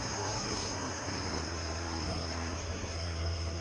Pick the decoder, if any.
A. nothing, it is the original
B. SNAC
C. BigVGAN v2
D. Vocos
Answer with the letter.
B